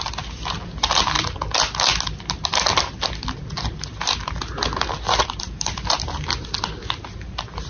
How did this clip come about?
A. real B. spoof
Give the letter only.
A